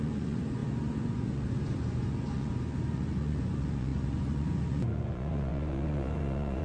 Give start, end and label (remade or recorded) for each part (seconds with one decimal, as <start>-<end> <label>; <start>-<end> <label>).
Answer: 0.0-6.6 remade